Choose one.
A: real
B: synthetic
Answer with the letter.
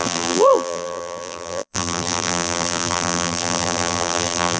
B